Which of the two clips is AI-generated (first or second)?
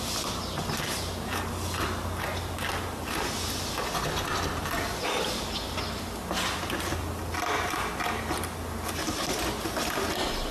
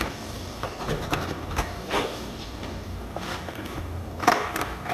second